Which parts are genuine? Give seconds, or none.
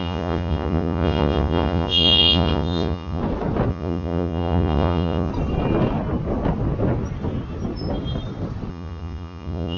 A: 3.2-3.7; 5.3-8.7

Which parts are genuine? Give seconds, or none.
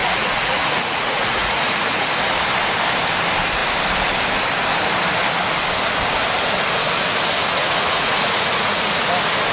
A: 2.1-7.6; 9.0-9.5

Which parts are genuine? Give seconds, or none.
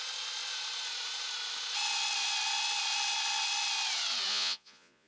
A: 0.0-4.3